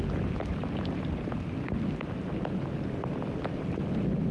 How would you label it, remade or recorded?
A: recorded